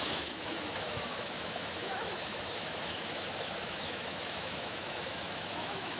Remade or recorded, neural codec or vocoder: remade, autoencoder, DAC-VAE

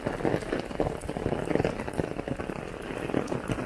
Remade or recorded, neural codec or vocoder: recorded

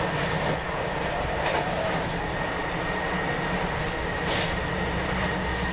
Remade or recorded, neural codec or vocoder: recorded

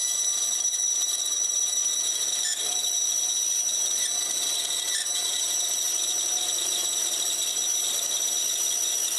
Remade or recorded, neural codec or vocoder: recorded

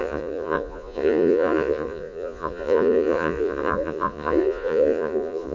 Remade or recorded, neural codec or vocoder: remade, vocoder, Vocos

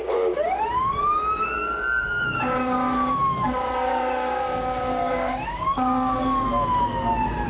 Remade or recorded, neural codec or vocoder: remade, codec, DAC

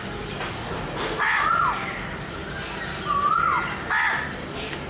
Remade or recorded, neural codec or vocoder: recorded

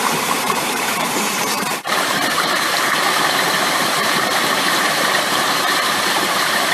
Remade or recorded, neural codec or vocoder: remade, vocoder, BigVGAN v2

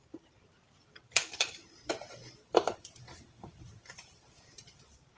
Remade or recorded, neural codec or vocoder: remade, vocoder, BigVGAN v2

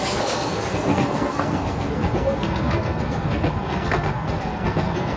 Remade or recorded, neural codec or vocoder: remade, codec, SNAC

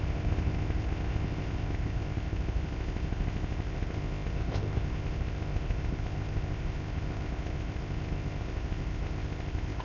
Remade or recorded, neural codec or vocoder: remade, codec, ZipCodec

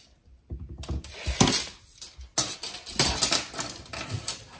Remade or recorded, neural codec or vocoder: recorded